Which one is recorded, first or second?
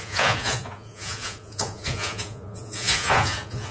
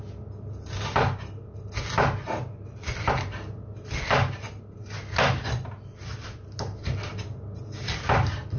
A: second